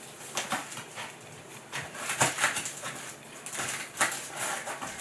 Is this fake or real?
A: real